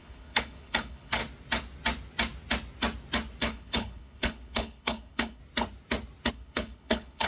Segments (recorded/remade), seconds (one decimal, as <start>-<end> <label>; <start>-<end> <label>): 0.0-1.2 remade; 1.2-3.4 recorded; 3.4-5.4 remade; 5.4-6.3 recorded; 6.3-7.3 remade